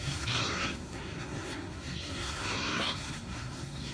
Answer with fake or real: fake